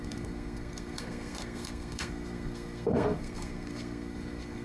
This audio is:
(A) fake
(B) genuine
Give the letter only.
A